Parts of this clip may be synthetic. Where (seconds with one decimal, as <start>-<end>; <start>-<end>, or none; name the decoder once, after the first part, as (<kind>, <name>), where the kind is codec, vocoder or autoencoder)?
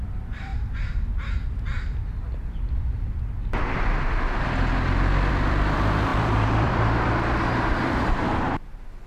0.0-0.5 (vocoder, BigVGAN v2); 5.3-9.1